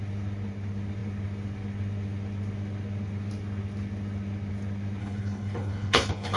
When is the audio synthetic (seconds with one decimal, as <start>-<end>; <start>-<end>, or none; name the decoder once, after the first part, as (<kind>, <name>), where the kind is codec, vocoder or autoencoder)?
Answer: 5.0-6.4 (codec, HILCodec)